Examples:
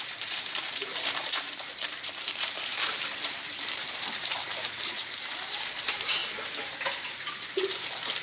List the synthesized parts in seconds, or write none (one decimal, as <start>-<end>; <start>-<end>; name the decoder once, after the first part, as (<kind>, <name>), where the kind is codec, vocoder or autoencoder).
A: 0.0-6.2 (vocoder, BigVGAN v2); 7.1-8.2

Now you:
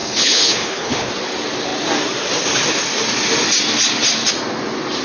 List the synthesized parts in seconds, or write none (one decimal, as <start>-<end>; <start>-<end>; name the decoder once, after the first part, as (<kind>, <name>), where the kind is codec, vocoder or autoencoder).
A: 0.0-1.1 (codec, HILCodec)

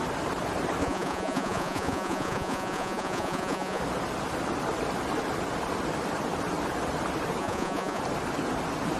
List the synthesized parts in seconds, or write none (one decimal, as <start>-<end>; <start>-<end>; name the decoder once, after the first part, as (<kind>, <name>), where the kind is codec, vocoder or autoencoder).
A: 0.8-3.8 (vocoder, Vocos); 7.4-8.0